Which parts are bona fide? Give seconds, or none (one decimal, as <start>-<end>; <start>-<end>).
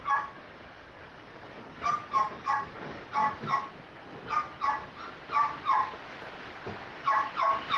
3.2-7.8